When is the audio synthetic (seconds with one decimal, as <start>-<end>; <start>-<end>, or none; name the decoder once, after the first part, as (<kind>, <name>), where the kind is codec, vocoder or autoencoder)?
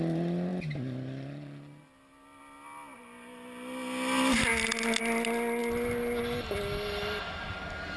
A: none